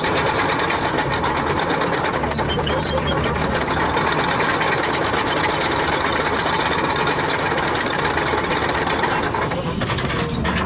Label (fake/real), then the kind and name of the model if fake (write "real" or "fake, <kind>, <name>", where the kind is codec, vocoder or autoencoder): real